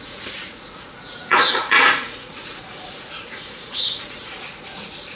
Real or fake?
fake